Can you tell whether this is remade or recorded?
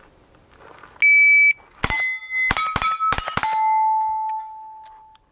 recorded